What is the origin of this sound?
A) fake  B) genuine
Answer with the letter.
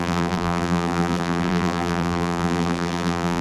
A